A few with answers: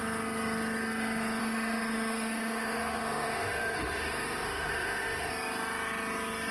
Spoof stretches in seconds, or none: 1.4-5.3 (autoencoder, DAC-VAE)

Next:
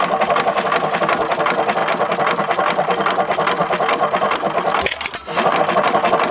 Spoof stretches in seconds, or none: none

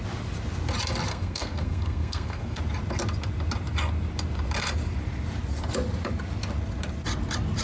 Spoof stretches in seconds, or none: 1.1-2.6 (codec, SNAC)

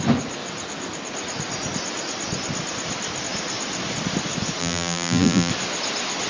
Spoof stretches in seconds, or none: 4.6-5.5 (vocoder, BigVGAN v2)

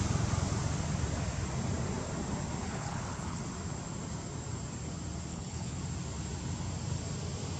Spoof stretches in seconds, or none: 2.6-3.4 (codec, HILCodec); 5.3-5.8

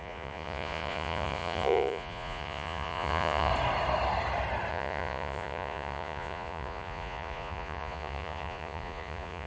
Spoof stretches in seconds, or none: 0.0-3.5 (vocoder, Vocos); 4.7-9.5

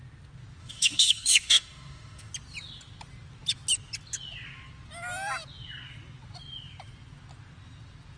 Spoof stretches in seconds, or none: 0.6-2.3 (autoencoder, DAC-VAE)

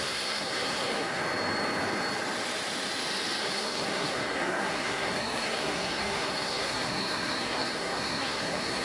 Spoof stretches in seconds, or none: 0.0-1.2 (codec, SNAC); 3.4-8.8